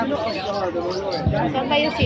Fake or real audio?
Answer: real